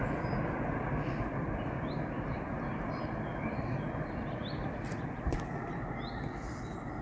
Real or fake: real